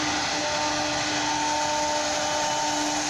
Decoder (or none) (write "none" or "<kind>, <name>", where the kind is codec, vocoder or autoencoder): none